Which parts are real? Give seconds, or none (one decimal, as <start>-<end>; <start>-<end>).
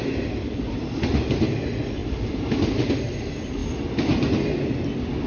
0.0-2.0; 3.0-3.6; 4.2-5.3